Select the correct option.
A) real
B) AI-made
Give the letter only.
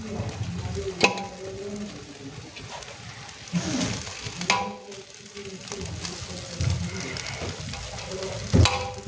A